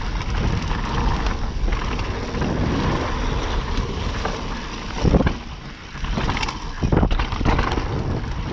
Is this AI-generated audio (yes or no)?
no